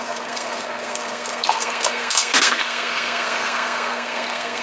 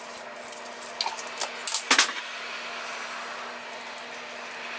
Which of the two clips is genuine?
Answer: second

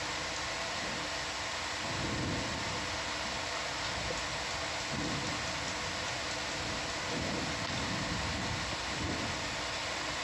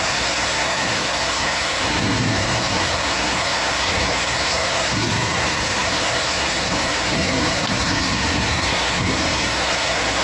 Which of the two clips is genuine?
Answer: first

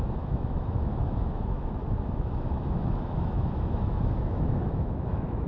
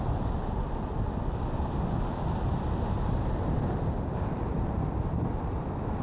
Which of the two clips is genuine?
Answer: second